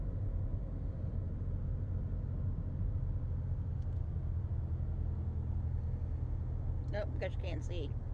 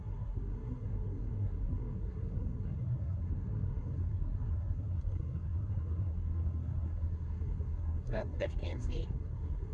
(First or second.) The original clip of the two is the first